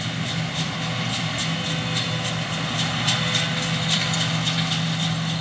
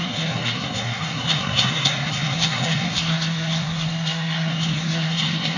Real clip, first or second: first